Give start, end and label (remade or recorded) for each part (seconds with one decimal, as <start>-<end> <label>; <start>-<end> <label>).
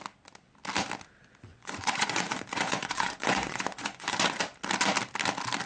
0.0-1.5 recorded; 1.5-4.4 remade; 4.4-5.7 recorded